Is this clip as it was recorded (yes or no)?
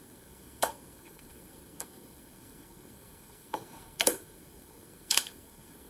no